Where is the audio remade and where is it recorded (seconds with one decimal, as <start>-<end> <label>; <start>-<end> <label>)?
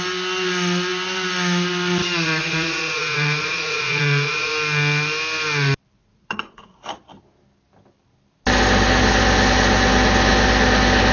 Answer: 0.0-2.0 recorded; 2.0-4.5 remade; 4.5-6.0 recorded; 6.0-6.9 remade; 6.9-11.1 recorded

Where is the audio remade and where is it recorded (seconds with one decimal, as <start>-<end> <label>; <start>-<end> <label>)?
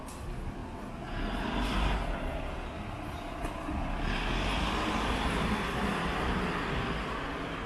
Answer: 0.0-7.7 recorded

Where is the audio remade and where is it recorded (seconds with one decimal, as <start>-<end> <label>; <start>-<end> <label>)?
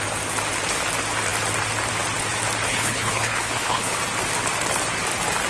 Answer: 0.0-2.7 recorded; 2.7-4.0 remade; 4.0-5.5 recorded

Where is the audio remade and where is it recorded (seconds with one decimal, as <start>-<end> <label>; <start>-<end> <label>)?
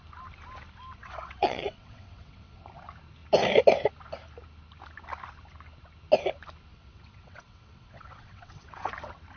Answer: 0.0-1.0 recorded; 1.0-2.6 remade; 2.6-6.7 recorded; 6.7-8.9 remade; 8.9-9.4 recorded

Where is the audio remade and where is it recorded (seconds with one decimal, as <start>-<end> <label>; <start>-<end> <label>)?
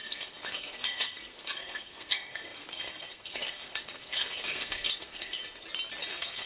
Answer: 0.0-5.4 remade; 5.4-6.1 recorded; 6.1-6.5 remade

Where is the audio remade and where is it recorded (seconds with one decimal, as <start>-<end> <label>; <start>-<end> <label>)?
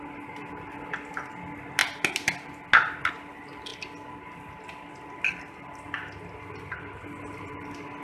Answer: 0.0-8.0 recorded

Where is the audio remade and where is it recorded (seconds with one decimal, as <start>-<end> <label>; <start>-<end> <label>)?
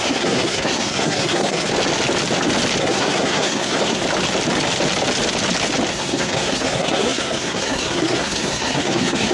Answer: 0.0-1.7 remade; 1.7-2.8 recorded; 2.8-4.0 remade; 4.0-5.9 recorded; 5.9-9.3 remade